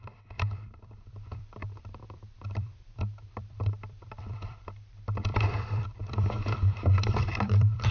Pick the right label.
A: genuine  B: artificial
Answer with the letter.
B